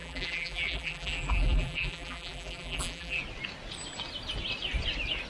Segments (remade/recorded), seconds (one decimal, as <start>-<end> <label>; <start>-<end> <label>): 0.0-3.2 remade; 3.2-5.3 recorded